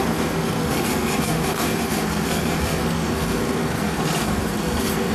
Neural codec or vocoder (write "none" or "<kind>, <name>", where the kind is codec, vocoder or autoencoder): codec, SNAC